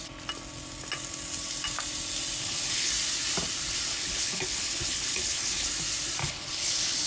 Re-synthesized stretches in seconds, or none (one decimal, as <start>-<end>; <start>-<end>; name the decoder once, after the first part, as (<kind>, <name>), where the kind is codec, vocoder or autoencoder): 2.4-2.9 (codec, HILCodec); 3.9-5.7; 6.2-7.1